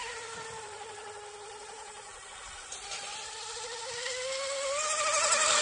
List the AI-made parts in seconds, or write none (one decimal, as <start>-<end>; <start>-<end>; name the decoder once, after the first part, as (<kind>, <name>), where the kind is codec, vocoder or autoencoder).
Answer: 0.0-1.0 (vocoder, BigVGAN v2); 1.6-2.1